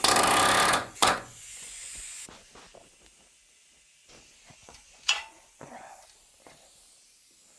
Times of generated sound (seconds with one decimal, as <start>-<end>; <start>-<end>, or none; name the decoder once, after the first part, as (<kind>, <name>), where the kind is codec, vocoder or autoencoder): 0.7-2.5 (vocoder, Vocos); 4.6-6.0